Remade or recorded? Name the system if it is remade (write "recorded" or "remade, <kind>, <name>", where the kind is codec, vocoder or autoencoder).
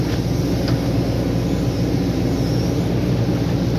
recorded